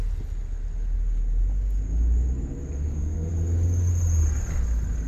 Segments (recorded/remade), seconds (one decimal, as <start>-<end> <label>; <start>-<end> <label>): 0.0-2.8 recorded; 2.8-3.3 remade; 3.3-5.1 recorded